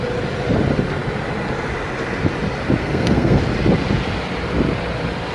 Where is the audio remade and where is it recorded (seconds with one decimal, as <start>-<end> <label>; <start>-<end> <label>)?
0.0-2.8 recorded; 2.8-3.4 remade; 3.4-5.3 recorded